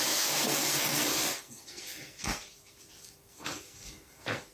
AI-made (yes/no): yes